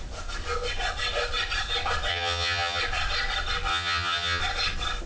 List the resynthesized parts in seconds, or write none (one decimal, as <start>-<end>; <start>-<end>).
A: 2.1-2.8; 3.7-4.4